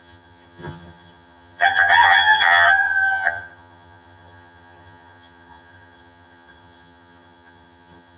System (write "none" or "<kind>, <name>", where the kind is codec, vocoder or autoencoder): vocoder, HiFi-GAN